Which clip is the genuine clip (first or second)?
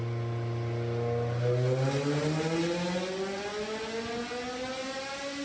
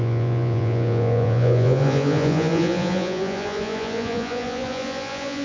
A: first